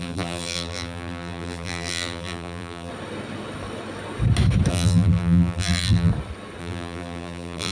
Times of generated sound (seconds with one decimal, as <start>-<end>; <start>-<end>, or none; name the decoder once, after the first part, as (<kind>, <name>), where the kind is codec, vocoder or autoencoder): 0.0-2.9 (vocoder, BigVGAN v2); 4.7-6.1; 6.6-7.7